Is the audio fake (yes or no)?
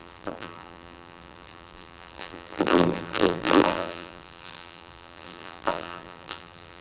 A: yes